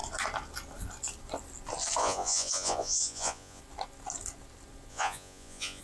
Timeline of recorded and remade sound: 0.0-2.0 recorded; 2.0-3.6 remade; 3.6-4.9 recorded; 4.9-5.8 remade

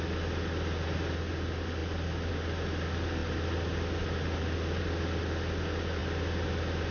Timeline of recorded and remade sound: 0.0-6.9 recorded

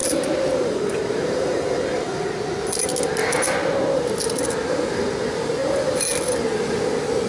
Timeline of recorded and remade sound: 0.0-1.7 remade; 1.7-3.2 recorded; 3.2-4.1 remade; 4.1-7.3 recorded

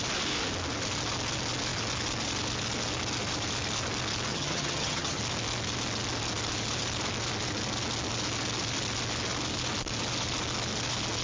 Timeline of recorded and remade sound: 0.0-4.3 recorded; 4.3-5.2 remade; 5.2-11.2 recorded

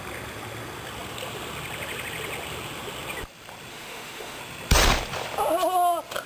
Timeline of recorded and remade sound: 0.0-3.7 recorded; 3.7-4.4 remade; 4.4-6.3 recorded

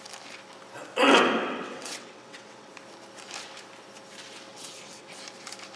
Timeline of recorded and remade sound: 0.0-1.4 recorded; 1.4-2.7 remade; 2.7-4.5 recorded; 4.5-5.1 remade; 5.1-5.8 recorded

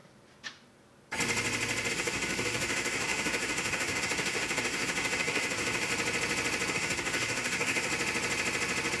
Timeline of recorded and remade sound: 0.0-1.9 recorded; 1.9-5.9 remade; 5.9-6.7 recorded; 6.7-7.9 remade; 7.9-9.0 recorded

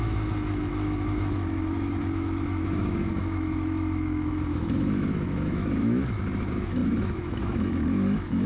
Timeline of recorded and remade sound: 0.0-8.5 remade